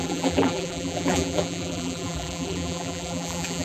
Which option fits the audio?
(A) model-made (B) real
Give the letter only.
A